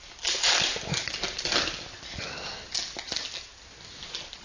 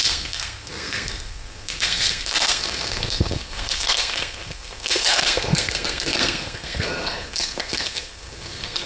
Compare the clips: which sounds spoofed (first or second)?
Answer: second